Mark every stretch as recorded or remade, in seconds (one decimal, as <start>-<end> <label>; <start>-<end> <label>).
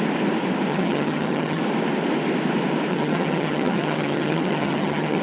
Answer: 0.0-0.7 recorded; 0.7-1.6 remade; 1.6-2.9 recorded; 2.9-5.2 remade